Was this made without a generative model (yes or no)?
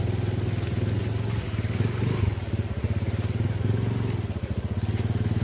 yes